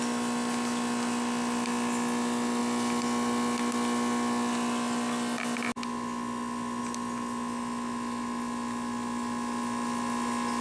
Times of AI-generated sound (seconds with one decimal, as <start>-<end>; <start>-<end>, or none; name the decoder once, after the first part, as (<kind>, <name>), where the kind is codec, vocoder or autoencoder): none